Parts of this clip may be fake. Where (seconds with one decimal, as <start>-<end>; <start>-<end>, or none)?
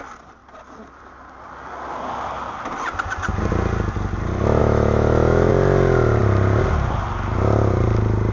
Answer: 4.6-5.5